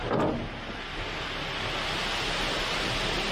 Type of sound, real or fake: real